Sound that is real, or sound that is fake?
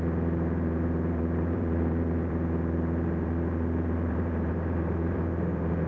fake